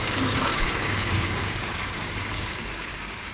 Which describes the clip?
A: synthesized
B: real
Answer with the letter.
A